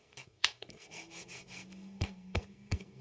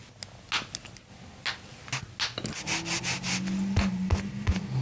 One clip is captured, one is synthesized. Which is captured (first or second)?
second